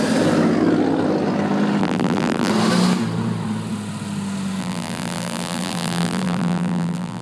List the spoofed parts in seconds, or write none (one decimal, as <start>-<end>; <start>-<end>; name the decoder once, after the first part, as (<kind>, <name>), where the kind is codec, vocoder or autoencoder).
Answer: 1.8-2.5 (vocoder, BigVGAN v2); 4.6-7.2